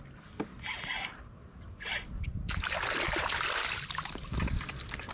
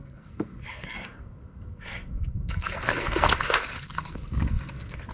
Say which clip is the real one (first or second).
first